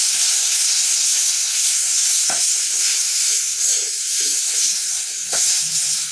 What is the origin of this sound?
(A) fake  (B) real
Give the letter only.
A